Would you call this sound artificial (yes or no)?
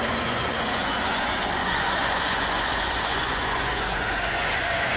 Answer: yes